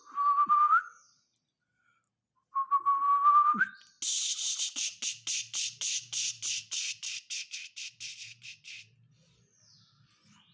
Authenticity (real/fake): real